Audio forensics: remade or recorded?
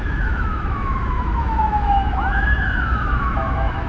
remade